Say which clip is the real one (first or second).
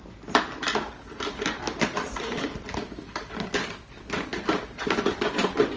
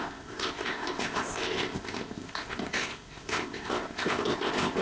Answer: first